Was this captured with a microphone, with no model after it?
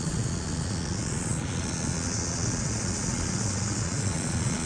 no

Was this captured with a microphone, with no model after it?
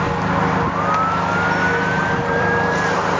no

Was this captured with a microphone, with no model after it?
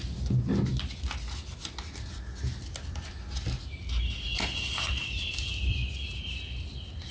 yes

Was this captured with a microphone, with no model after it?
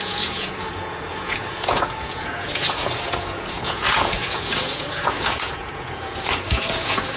no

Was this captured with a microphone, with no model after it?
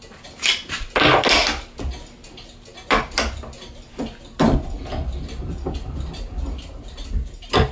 yes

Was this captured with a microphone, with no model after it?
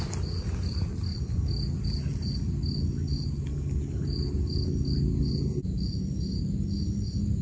yes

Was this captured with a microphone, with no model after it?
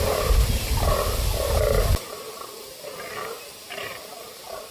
yes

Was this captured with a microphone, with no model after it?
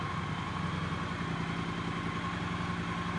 yes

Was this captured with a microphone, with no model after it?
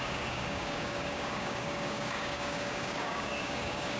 no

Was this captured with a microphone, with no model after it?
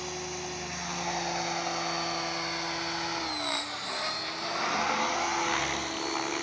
yes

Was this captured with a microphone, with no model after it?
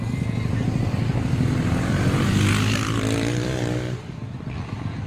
yes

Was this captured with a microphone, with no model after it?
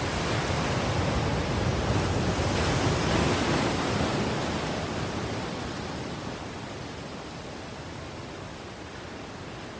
yes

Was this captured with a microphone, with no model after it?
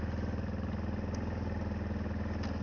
yes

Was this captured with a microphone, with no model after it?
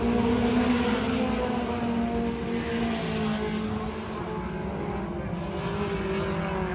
yes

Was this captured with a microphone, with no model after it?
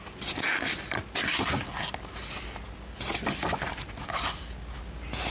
yes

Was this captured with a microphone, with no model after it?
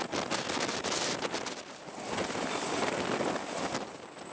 yes